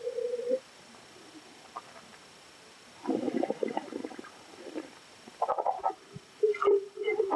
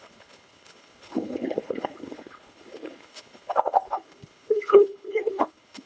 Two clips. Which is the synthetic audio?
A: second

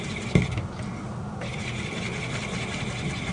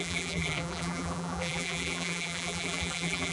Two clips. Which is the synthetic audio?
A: second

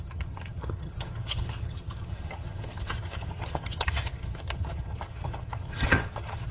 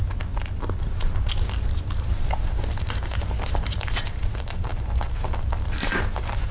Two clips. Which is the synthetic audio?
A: first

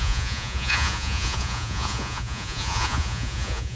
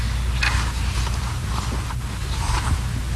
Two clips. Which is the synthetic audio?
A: first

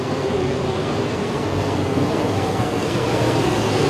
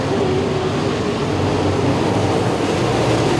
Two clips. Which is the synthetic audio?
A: first